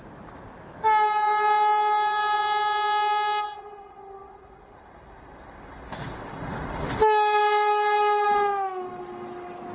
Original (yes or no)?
yes